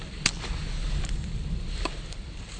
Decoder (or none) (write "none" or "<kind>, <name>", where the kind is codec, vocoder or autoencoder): none